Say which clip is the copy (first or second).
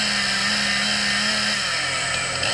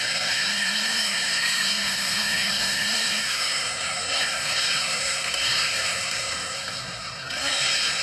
second